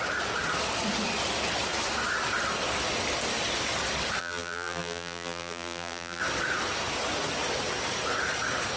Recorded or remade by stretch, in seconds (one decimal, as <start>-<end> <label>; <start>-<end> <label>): 0.0-4.2 recorded; 4.2-6.2 remade; 6.2-8.8 recorded

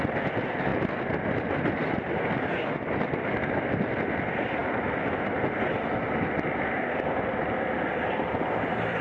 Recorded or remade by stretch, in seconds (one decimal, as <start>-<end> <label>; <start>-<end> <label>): 0.0-9.0 recorded

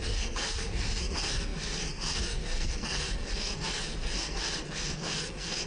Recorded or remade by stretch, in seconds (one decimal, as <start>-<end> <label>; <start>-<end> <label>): 0.0-5.7 remade

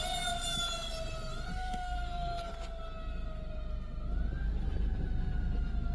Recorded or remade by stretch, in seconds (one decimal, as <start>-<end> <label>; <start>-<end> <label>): 0.0-1.5 recorded; 1.5-2.5 remade; 2.5-5.9 recorded

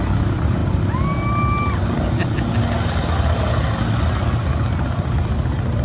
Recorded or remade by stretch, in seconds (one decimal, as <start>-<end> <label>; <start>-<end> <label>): 0.0-5.8 recorded